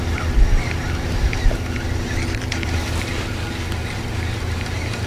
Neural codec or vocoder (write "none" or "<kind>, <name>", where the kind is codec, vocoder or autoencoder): none